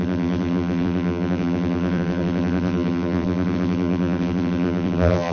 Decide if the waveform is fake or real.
fake